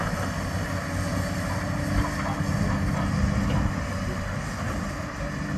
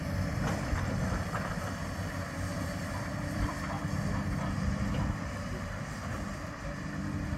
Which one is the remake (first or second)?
second